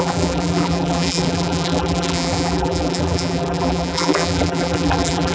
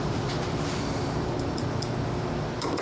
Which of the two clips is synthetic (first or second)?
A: first